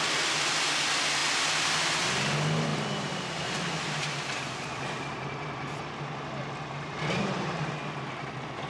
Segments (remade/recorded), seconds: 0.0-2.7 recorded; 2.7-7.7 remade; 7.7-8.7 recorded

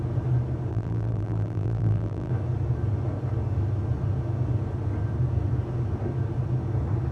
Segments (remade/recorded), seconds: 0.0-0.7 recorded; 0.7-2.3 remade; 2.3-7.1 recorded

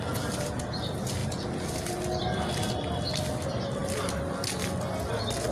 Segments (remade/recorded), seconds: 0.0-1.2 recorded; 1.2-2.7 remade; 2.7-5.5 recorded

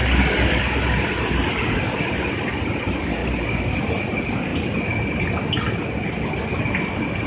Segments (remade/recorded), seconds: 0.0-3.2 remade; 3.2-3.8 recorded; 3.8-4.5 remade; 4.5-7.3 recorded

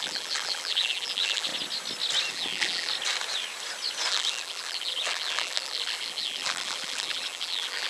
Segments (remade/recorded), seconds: 0.0-1.5 remade; 1.5-2.3 recorded; 2.3-2.9 remade; 2.9-4.1 recorded; 4.1-7.9 remade